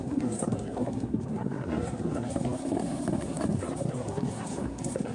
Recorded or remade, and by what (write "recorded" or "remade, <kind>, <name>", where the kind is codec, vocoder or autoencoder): remade, codec, SNAC